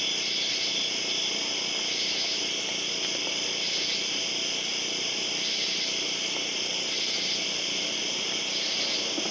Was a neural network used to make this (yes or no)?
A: no